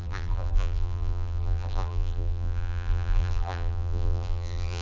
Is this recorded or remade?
remade